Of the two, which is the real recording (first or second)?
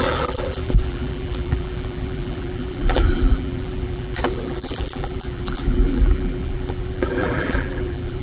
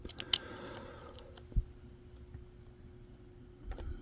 second